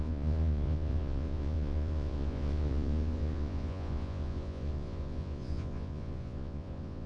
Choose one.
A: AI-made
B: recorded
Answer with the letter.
A